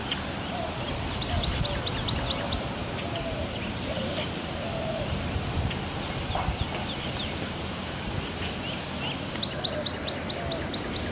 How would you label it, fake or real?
real